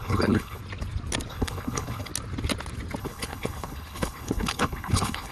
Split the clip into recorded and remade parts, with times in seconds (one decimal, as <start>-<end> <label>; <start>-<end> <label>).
0.0-0.6 remade; 0.6-1.3 recorded; 1.3-2.1 remade; 2.1-3.0 recorded; 3.0-5.3 remade